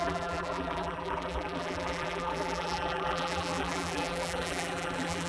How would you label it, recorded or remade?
remade